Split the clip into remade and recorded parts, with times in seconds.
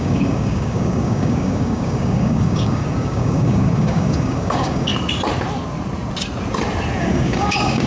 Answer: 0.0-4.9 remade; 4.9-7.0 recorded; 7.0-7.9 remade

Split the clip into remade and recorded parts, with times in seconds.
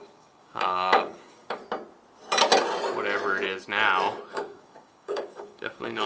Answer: 0.0-1.6 remade; 1.6-4.3 recorded; 4.3-6.1 remade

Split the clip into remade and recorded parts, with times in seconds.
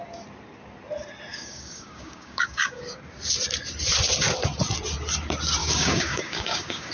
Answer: 0.0-1.3 recorded; 1.3-3.0 remade; 3.0-5.6 recorded; 5.6-6.9 remade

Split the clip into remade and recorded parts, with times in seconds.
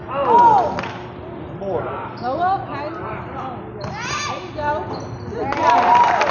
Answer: 0.0-6.3 recorded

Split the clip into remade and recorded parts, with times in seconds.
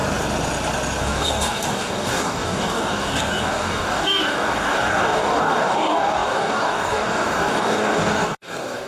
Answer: 0.0-1.0 recorded; 1.0-8.9 remade